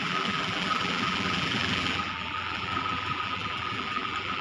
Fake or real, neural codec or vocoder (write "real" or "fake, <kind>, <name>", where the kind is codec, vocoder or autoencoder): fake, vocoder, BigVGAN v2